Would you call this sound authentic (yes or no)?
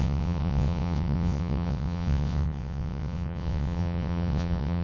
no